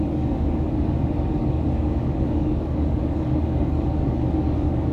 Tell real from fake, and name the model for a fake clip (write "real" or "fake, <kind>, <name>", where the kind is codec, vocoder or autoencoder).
fake, codec, DAC